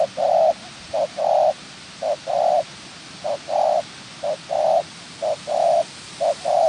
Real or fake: real